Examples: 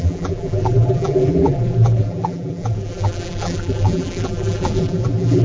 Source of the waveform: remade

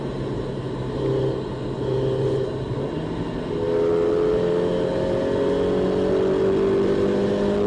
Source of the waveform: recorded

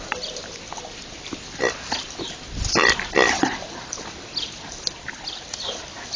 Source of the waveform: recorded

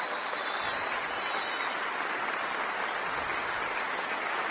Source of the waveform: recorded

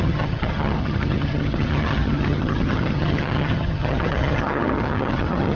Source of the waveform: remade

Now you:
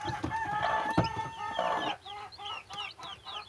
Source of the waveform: recorded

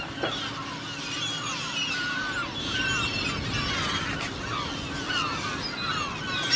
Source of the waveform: recorded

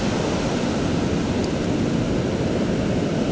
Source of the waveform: recorded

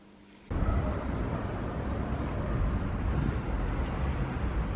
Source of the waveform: recorded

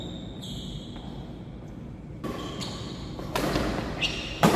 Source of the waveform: recorded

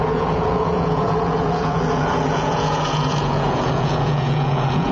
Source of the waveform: remade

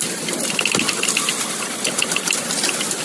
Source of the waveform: recorded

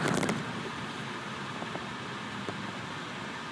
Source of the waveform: recorded